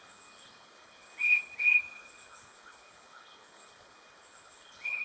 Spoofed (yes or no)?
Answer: yes